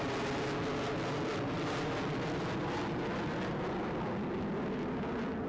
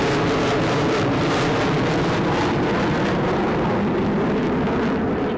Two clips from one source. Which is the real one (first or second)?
first